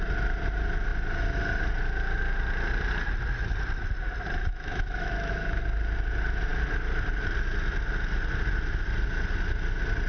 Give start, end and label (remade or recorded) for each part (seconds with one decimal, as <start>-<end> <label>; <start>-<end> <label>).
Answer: 0.0-4.4 recorded; 4.4-5.6 remade; 5.6-10.1 recorded